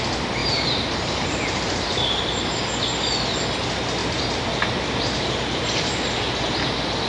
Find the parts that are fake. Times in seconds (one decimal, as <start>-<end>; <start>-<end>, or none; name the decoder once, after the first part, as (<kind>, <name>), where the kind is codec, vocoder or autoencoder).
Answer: 0.4-2.2 (vocoder, BigVGAN v2); 4.0-5.9